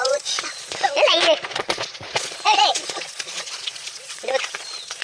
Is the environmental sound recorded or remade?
remade